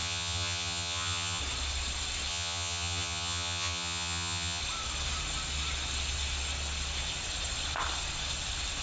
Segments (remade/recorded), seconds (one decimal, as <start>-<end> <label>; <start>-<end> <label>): 0.0-1.4 remade; 1.4-2.3 recorded; 2.3-4.6 remade; 4.6-8.8 recorded